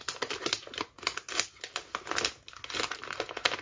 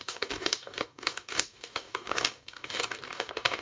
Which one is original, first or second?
first